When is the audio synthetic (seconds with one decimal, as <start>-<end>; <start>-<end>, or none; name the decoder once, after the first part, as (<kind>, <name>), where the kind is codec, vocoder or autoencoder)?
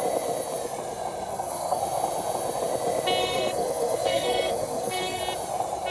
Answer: 1.3-1.8 (codec, SNAC); 3.2-5.2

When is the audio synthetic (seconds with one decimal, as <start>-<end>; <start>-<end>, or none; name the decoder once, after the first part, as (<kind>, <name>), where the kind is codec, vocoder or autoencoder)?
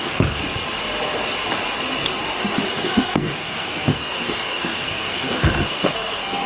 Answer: 0.0-0.4 (codec, SNAC); 2.7-6.5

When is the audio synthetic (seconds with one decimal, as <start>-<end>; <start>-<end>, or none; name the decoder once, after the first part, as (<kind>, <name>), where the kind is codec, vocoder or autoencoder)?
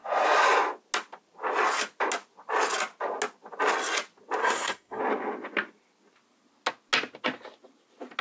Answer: 4.4-5.0 (codec, SNAC)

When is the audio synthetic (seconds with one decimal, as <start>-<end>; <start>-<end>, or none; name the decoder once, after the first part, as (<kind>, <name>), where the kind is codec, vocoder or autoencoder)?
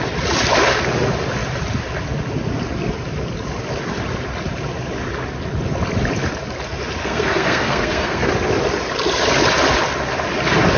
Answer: 7.0-8.3 (codec, SNAC)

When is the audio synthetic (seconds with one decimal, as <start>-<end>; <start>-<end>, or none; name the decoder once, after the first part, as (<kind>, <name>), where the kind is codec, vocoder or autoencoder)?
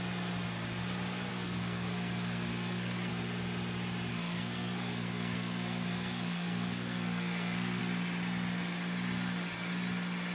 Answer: 1.3-3.1 (codec, SNAC); 4.1-7.8